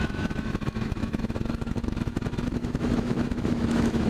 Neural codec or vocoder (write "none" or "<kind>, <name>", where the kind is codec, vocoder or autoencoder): autoencoder, DAC-VAE